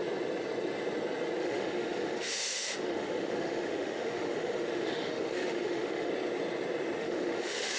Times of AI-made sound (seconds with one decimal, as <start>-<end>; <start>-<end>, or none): 1.4-6.1; 7.0-7.8